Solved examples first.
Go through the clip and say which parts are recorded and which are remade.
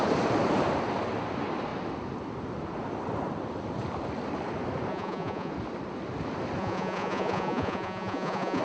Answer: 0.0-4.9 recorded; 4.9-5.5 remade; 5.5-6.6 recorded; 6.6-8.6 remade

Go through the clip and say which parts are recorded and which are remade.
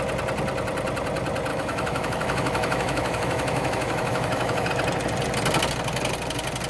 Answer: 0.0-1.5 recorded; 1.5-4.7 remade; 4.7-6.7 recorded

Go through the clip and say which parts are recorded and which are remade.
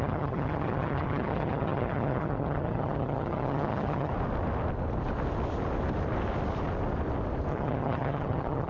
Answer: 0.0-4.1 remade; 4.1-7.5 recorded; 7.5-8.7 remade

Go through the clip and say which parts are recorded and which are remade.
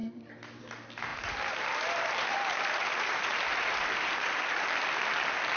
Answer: 0.0-1.1 recorded; 1.1-4.5 remade; 4.5-5.6 recorded